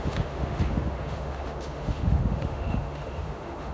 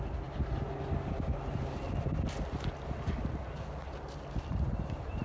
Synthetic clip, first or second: first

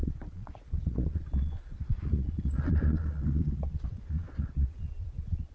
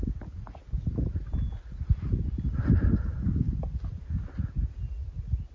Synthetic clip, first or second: first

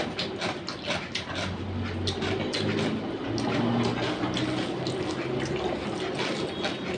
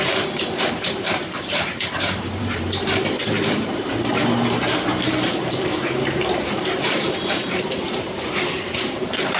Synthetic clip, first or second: second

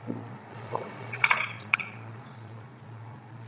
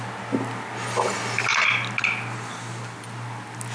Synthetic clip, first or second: first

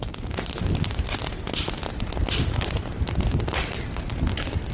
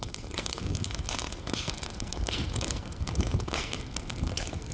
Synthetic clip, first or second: second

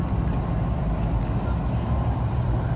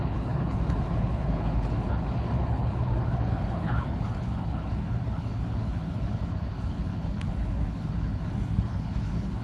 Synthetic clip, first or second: second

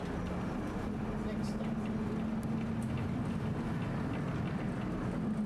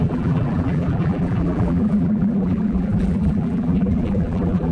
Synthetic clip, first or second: second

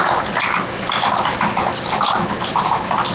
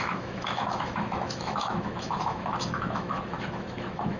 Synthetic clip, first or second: second